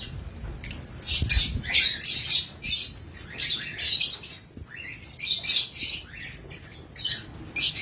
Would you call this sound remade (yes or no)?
no